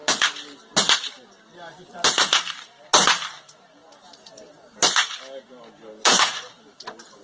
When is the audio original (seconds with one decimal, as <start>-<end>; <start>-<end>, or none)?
0.0-1.5; 2.2-3.8; 6.6-7.2